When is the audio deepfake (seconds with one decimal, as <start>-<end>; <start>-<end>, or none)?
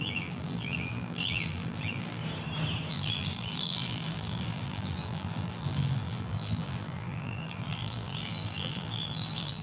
0.0-2.2; 2.9-9.6